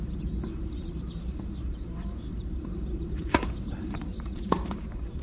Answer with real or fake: fake